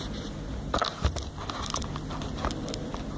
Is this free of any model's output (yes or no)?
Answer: yes